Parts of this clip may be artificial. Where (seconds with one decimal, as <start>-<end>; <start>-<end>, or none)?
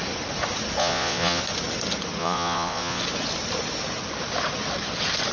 0.8-1.4; 2.2-3.0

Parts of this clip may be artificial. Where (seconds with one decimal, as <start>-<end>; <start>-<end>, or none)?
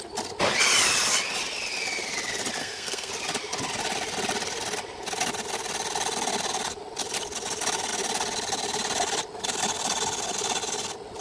2.6-3.1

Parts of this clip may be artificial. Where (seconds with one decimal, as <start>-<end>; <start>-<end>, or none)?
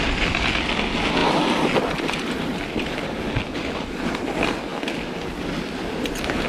none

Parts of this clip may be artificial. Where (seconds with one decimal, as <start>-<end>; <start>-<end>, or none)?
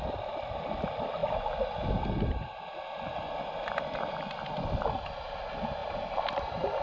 5.8-6.8